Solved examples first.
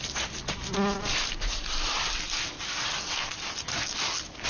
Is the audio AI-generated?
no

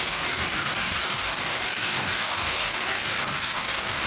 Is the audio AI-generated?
yes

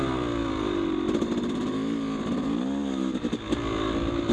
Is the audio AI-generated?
no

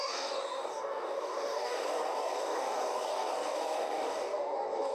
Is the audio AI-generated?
yes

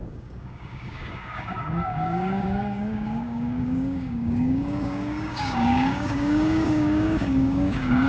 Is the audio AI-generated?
yes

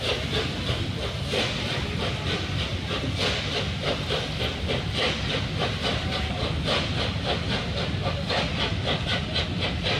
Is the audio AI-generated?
no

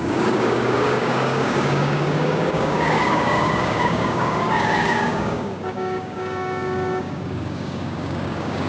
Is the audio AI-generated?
yes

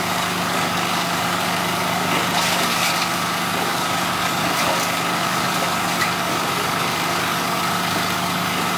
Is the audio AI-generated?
yes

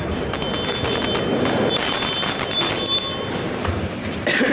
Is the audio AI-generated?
no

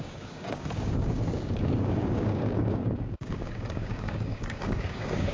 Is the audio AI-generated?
yes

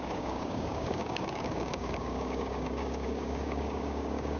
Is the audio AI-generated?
yes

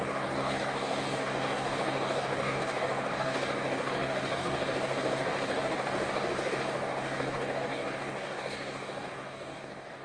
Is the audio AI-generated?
yes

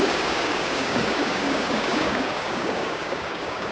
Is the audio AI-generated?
yes